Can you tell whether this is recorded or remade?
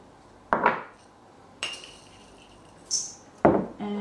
remade